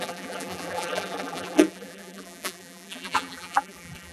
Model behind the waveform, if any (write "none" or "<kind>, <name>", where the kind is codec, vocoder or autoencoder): vocoder, BigVGAN v2